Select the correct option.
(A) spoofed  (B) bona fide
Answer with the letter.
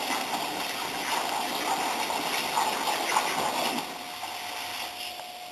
B